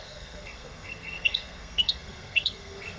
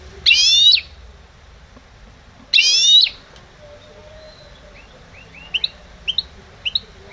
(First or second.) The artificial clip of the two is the first